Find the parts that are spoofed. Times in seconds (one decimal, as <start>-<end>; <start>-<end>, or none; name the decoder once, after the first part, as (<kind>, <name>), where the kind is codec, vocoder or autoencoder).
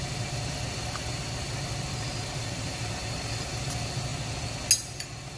0.0-4.1 (vocoder, BigVGAN v2); 4.9-5.4